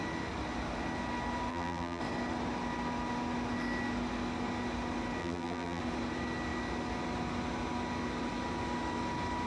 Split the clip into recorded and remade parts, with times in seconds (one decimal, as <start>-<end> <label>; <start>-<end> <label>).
0.0-1.5 recorded; 1.5-2.0 remade; 2.0-5.2 recorded; 5.2-5.8 remade; 5.8-9.5 recorded